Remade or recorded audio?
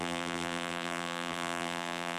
remade